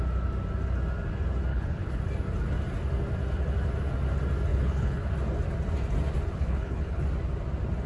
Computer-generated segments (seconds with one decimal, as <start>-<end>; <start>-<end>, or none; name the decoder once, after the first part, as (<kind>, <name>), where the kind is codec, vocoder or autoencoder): 1.5-2.0 (codec, HILCodec); 4.5-5.1; 6.3-7.0